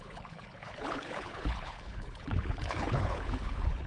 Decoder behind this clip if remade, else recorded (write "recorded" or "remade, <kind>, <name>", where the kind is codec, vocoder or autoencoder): remade, codec, HILCodec